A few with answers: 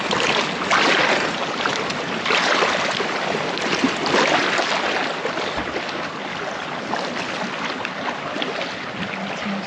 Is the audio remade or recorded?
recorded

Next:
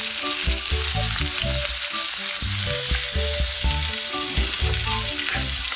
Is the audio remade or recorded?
recorded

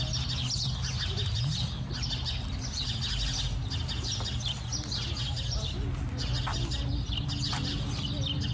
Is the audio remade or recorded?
recorded